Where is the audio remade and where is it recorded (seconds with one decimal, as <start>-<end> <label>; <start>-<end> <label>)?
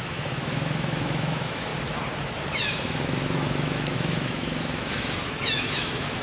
0.0-1.7 remade; 1.7-2.5 recorded; 2.5-6.2 remade